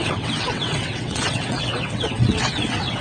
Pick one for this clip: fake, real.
fake